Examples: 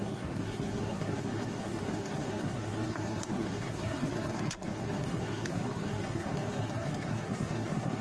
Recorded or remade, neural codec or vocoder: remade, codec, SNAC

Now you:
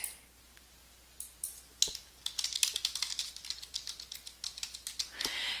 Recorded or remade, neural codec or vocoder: recorded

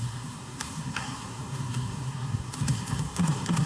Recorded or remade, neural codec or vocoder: remade, codec, SNAC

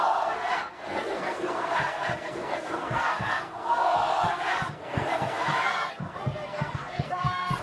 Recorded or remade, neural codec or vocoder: remade, codec, SNAC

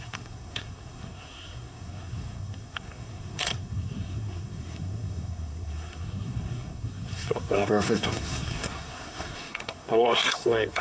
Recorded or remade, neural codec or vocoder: remade, codec, SNAC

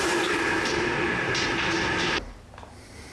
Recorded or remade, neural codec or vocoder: recorded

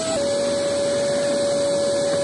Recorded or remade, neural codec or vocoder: recorded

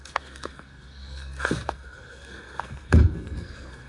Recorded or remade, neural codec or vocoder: remade, codec, SNAC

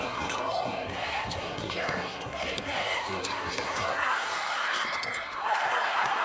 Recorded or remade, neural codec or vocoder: remade, codec, SNAC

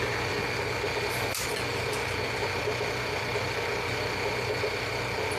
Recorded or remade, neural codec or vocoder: recorded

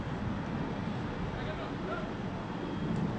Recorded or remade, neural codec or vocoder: recorded